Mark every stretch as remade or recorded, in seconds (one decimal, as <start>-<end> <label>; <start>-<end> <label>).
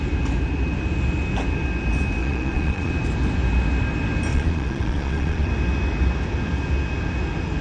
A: 0.0-2.2 recorded; 2.2-2.9 remade; 2.9-4.3 recorded; 4.3-5.5 remade; 5.5-7.6 recorded